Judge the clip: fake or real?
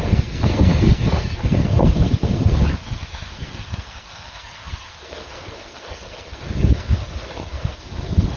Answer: fake